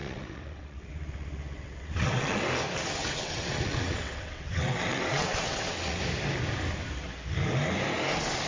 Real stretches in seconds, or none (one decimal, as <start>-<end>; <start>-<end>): 2.4-3.0; 6.0-8.5